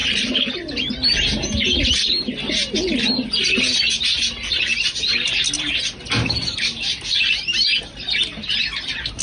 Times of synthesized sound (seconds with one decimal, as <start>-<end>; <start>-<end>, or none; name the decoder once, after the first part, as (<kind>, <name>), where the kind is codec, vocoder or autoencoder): none